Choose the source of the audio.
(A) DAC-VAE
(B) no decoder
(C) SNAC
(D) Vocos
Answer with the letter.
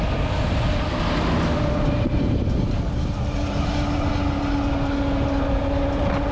B